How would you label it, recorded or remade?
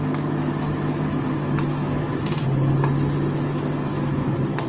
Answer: recorded